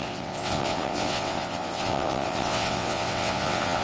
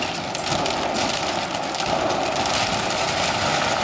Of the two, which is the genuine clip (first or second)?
second